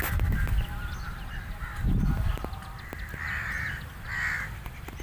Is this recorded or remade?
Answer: recorded